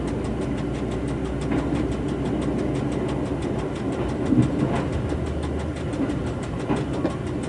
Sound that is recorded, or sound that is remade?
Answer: recorded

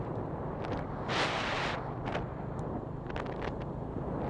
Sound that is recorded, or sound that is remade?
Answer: recorded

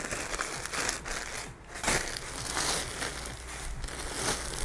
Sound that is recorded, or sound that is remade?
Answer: recorded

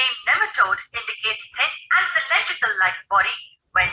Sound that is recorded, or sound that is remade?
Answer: recorded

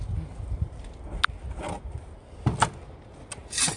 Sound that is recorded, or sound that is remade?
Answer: recorded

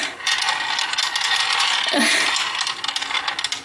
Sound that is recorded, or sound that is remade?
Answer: recorded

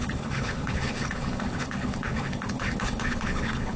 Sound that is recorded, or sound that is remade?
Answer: remade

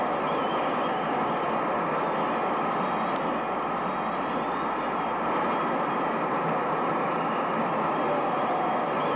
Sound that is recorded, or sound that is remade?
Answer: recorded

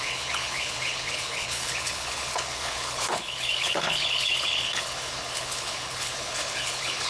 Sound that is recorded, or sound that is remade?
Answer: remade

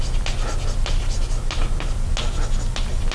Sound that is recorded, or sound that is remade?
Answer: recorded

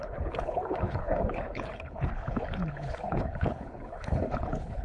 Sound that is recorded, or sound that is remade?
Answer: remade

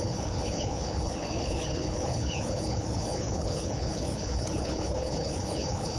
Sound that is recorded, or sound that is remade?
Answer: remade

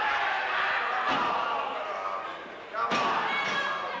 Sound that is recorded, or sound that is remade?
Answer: recorded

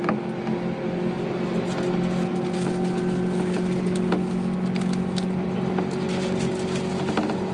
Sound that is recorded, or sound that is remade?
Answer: recorded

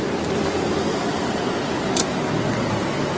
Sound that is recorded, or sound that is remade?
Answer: recorded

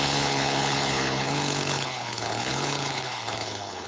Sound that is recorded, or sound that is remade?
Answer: remade